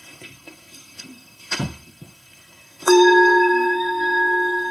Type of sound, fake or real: fake